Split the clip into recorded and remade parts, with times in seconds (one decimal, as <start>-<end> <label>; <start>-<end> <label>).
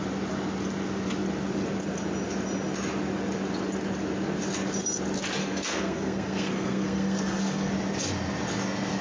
0.0-5.4 recorded; 5.4-7.7 remade; 7.7-9.0 recorded